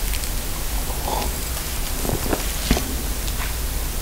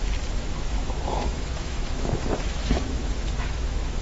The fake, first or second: second